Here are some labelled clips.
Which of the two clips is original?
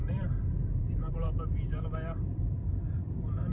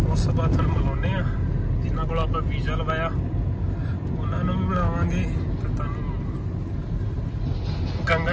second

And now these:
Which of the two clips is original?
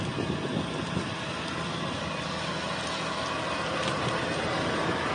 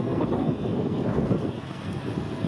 first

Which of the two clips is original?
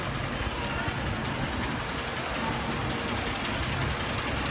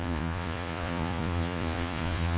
first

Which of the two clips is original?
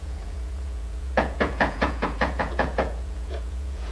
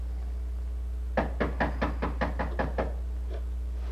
second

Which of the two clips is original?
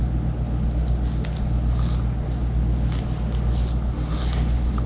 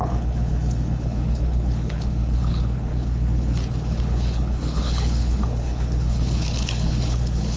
first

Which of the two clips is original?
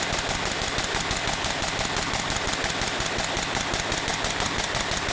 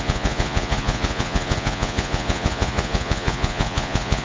first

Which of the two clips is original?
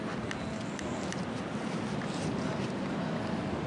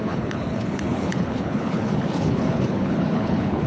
first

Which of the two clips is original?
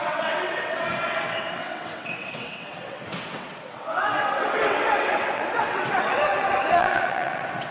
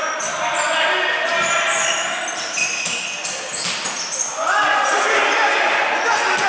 second